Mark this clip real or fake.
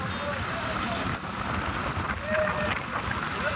real